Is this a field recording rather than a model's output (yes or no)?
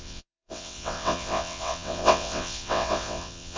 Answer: no